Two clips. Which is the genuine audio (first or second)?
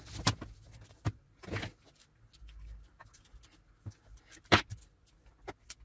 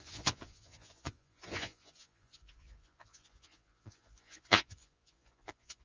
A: first